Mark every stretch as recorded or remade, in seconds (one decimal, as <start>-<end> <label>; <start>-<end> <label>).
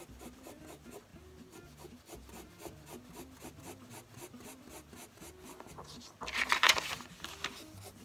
0.0-8.0 recorded